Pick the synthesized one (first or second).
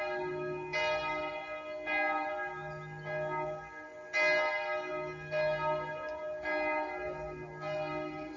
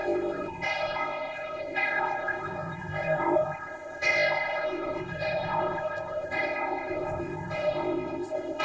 second